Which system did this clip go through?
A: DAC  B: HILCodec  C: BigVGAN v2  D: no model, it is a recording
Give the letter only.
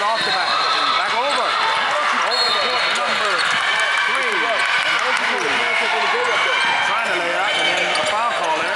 D